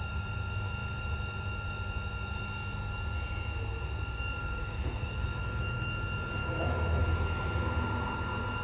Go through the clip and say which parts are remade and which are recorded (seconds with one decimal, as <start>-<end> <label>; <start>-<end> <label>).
0.0-4.4 recorded; 4.4-5.9 remade; 5.9-6.4 recorded; 6.4-7.0 remade; 7.0-8.6 recorded